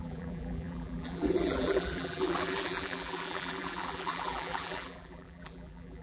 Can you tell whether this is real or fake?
fake